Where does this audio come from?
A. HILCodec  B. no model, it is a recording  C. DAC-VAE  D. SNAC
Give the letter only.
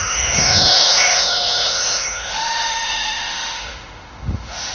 C